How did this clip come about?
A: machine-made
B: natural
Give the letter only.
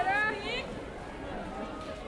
B